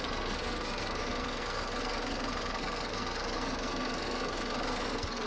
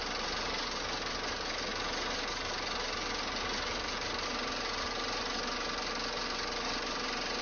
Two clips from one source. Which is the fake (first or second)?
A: first